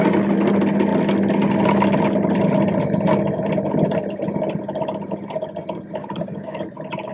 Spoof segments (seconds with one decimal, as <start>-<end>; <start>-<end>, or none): 6.0-6.6